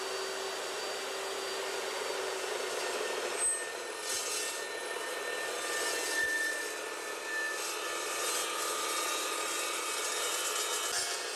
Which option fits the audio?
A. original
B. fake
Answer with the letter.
A